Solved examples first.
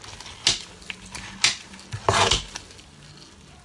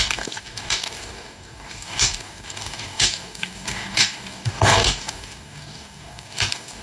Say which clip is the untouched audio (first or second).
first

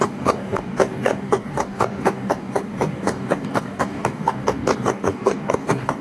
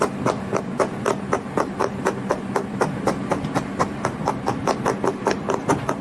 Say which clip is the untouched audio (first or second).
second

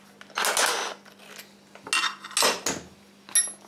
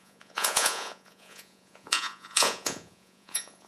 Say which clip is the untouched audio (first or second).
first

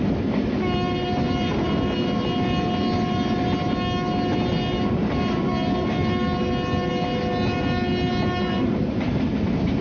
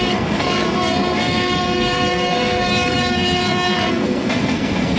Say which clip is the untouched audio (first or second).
first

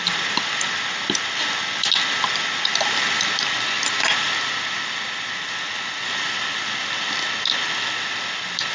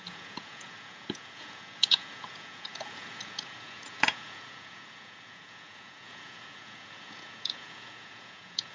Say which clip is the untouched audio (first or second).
first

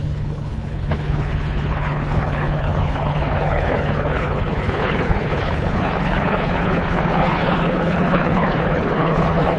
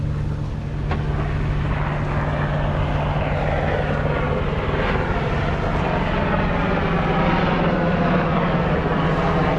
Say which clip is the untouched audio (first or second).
second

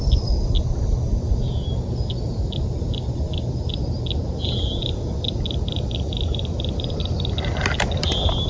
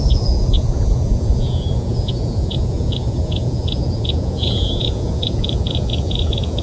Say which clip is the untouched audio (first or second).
first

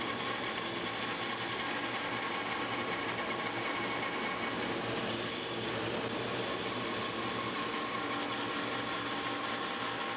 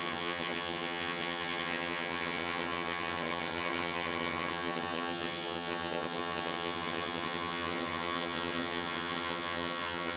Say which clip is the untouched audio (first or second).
first